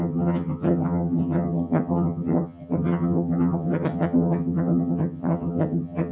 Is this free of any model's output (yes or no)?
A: no